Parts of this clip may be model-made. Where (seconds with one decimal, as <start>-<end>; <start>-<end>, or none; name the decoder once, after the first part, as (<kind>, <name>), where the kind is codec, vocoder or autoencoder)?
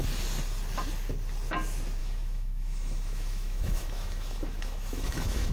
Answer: 2.0-5.5 (autoencoder, DAC-VAE)